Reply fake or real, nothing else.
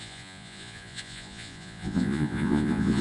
fake